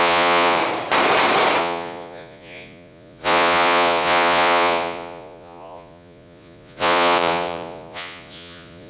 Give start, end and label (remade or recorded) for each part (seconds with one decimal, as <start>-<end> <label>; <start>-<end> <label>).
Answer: 0.0-0.6 remade; 0.6-1.6 recorded; 1.6-8.9 remade